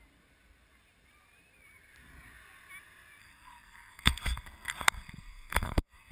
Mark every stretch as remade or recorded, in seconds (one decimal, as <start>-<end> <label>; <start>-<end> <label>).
0.0-3.2 recorded; 3.2-6.1 remade